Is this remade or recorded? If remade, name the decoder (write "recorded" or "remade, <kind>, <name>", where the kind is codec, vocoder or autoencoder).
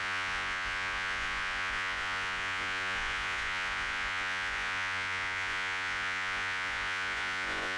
remade, vocoder, Vocos